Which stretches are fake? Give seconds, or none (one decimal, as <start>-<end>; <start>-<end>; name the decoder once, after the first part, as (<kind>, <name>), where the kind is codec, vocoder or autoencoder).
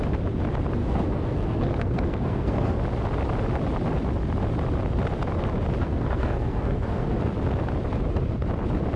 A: 0.8-2.8 (codec, SNAC); 5.8-7.2